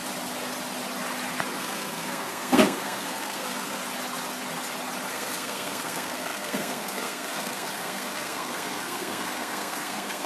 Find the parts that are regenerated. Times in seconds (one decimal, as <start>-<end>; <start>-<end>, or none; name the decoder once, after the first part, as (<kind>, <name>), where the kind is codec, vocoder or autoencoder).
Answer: 1.6-3.8 (codec, SNAC); 5.1-10.3